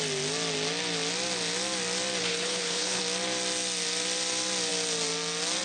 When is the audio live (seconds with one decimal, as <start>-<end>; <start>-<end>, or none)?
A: 0.0-2.2; 3.0-5.6